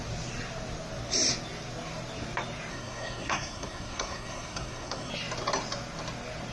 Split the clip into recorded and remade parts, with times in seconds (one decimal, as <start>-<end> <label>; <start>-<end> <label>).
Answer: 0.0-2.7 recorded; 2.7-5.1 remade; 5.1-6.5 recorded